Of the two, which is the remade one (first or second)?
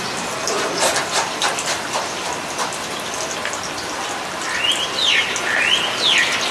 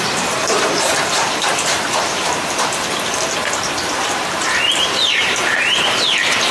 second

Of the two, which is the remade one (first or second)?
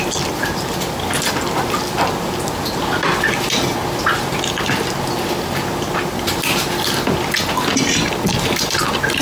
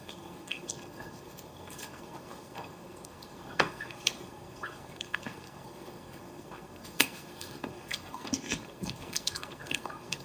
second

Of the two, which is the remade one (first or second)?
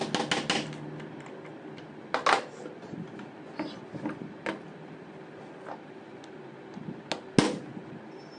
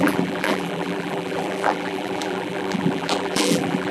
second